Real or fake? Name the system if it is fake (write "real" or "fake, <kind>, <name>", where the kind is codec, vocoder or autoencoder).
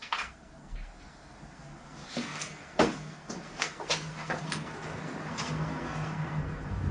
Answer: fake, codec, SNAC